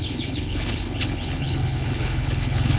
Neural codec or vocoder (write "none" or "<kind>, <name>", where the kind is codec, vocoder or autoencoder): codec, HILCodec